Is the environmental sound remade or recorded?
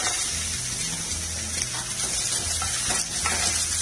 recorded